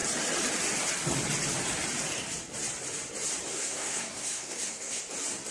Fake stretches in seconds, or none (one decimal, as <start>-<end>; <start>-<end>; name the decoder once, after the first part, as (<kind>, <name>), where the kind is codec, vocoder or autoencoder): 3.5-5.0 (codec, SNAC)